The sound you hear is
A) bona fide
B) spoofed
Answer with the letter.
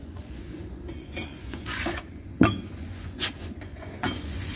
B